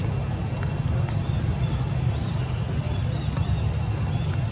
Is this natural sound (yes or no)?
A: yes